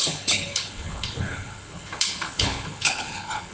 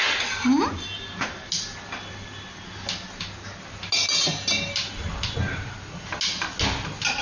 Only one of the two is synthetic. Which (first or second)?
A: first